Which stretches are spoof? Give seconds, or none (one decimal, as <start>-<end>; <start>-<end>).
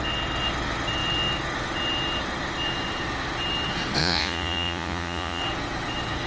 4.0-5.4